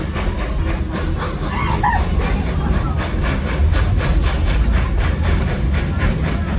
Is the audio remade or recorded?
recorded